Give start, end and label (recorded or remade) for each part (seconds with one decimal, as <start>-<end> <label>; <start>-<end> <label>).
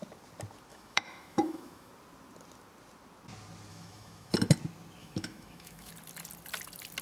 0.0-0.7 recorded; 0.7-1.9 remade; 1.9-3.7 recorded; 3.7-4.3 remade; 4.3-5.0 recorded; 5.0-5.9 remade; 5.9-7.0 recorded